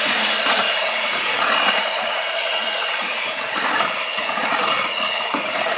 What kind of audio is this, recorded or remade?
remade